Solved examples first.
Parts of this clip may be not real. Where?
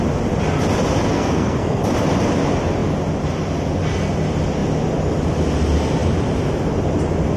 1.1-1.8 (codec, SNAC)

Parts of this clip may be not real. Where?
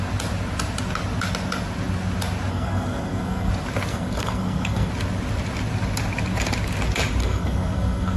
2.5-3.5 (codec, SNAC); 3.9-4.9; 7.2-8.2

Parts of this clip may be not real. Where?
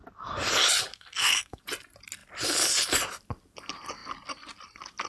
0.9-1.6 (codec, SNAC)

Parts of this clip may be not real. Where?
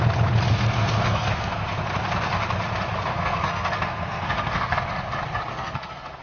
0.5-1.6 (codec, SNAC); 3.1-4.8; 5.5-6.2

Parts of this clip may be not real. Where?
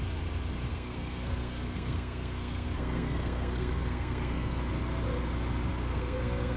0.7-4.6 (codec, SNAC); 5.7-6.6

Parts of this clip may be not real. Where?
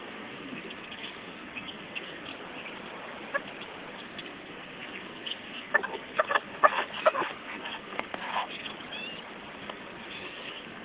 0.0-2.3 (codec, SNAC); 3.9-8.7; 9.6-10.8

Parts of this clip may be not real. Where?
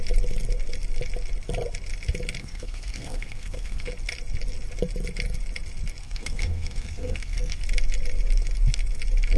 2.4-3.9 (codec, SNAC); 6.0-7.6